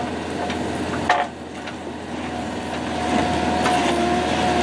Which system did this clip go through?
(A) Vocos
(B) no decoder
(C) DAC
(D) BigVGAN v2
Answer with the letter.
B